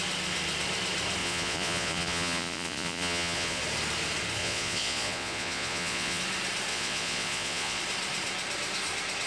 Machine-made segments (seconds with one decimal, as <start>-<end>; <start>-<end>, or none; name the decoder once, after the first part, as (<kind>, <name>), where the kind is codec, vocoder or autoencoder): 1.2-3.6 (vocoder, Vocos); 4.4-6.2; 6.7-7.8